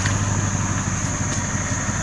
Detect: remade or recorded recorded